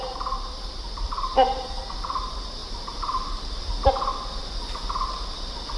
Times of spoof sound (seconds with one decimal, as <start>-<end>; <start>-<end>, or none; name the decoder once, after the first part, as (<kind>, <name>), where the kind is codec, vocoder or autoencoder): 0.0-1.9 (vocoder, BigVGAN v2); 2.6-3.9